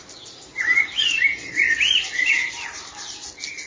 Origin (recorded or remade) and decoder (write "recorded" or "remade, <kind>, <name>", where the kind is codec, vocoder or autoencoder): recorded